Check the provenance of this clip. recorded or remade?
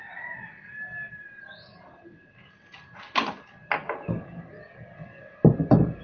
recorded